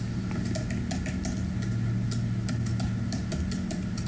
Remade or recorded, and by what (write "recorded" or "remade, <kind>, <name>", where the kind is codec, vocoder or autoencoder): recorded